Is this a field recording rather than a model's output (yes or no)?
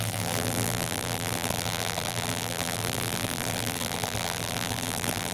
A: no